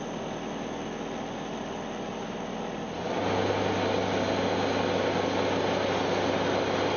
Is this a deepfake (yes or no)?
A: no